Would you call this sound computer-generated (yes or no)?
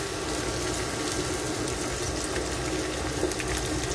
no